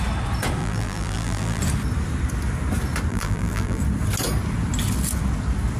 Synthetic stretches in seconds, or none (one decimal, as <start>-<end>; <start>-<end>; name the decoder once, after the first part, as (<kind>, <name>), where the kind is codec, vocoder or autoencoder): 0.6-1.6 (vocoder, BigVGAN v2); 3.1-3.8